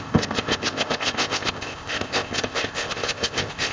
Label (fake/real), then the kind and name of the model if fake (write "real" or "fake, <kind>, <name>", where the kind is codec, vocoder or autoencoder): fake, codec, ZipCodec